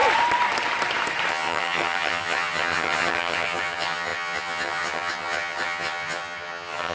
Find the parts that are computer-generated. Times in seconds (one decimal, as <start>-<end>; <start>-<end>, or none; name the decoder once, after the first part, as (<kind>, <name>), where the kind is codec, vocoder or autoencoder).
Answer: 1.3-6.9 (vocoder, HiFi-GAN)